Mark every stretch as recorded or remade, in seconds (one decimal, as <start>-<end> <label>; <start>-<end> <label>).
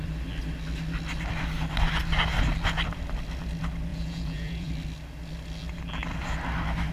0.0-3.9 recorded; 3.9-4.7 remade; 4.7-6.9 recorded